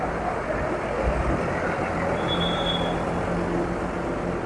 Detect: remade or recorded recorded